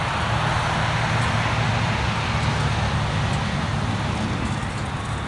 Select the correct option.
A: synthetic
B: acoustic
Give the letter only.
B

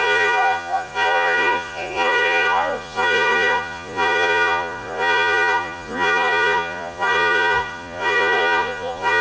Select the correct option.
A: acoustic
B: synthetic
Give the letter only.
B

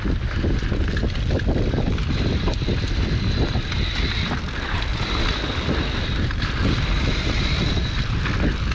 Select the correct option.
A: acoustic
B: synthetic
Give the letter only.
A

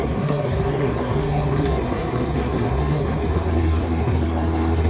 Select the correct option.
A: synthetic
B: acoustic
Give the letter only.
A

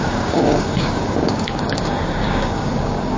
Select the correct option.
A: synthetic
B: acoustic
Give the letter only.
A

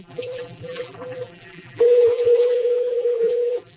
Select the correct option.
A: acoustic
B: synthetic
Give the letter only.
B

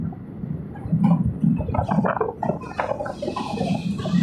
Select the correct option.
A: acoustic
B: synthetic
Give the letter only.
A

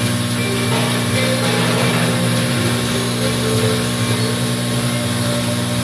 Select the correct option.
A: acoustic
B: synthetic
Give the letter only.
A